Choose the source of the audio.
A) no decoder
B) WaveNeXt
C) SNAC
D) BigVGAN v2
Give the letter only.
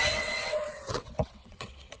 B